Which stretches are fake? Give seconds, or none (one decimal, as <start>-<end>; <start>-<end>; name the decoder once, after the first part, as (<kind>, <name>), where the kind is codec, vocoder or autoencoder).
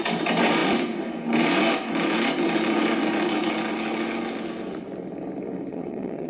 5.7-6.3 (vocoder, Vocos)